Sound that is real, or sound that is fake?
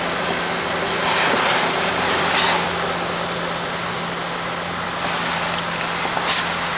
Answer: real